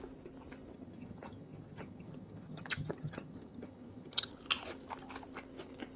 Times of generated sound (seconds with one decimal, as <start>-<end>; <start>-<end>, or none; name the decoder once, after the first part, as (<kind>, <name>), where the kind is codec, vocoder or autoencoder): 0.7-4.3 (vocoder, HiFi-GAN)